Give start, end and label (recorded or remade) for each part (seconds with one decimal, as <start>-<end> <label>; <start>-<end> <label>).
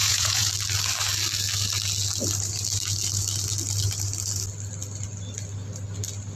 0.0-0.5 remade; 0.5-6.4 recorded